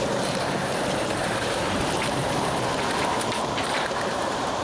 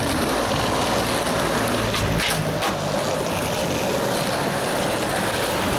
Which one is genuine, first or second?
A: second